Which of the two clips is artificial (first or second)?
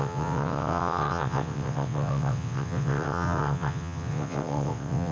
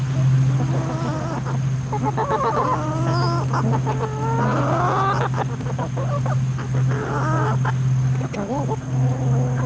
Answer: first